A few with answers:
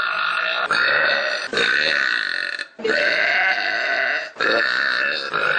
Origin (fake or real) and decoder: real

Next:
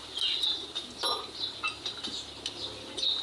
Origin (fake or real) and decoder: real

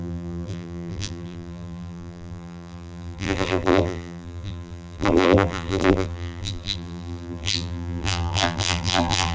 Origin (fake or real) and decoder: fake, vocoder, BigVGAN v2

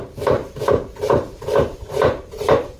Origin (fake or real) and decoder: fake, vocoder, BigVGAN v2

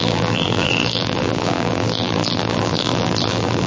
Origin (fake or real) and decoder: fake, vocoder, BigVGAN v2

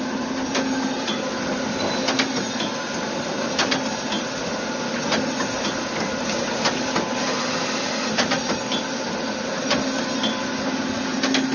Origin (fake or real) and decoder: real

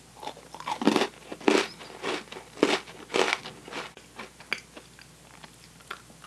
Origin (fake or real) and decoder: real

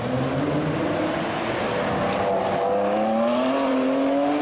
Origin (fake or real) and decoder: real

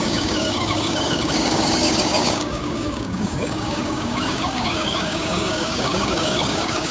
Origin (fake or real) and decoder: fake, codec, DAC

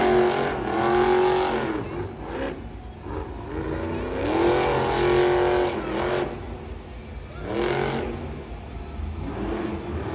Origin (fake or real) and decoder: real